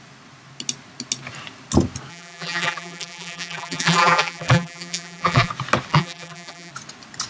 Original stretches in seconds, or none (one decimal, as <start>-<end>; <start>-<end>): 0.0-2.1; 5.5-5.9; 6.7-7.3